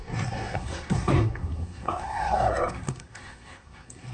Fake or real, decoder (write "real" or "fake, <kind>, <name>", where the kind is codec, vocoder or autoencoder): fake, codec, SNAC